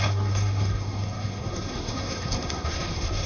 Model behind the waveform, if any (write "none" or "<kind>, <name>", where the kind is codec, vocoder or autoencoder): codec, SNAC